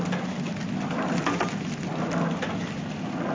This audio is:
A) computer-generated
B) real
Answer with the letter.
B